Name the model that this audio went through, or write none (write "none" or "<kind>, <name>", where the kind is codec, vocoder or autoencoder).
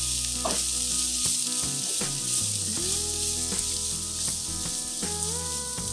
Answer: none